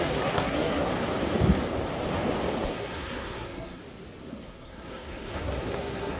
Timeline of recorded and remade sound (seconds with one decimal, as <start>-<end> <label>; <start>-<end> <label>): 0.0-0.9 remade; 0.9-2.7 recorded; 2.7-3.8 remade; 3.8-4.3 recorded; 4.3-6.2 remade